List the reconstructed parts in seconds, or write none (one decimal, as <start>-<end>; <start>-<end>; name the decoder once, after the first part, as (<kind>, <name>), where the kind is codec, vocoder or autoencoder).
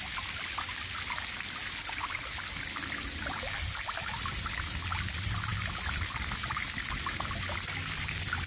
none